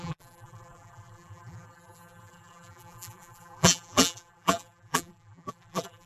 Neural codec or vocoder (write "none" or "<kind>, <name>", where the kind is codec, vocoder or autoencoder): vocoder, BigVGAN v2